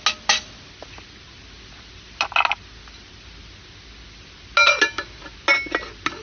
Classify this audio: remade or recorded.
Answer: recorded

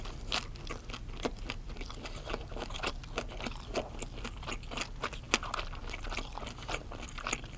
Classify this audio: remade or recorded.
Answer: recorded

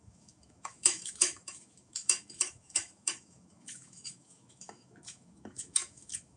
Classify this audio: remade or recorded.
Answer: remade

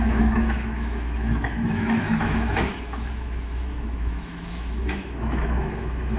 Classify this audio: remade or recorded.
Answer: remade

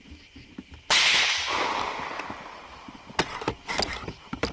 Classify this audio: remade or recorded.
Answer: recorded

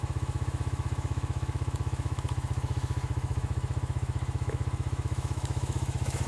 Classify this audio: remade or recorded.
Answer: remade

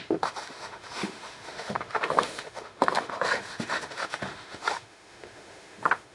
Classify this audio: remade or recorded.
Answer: remade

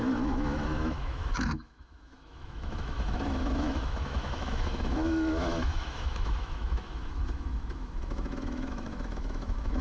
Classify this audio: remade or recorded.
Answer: remade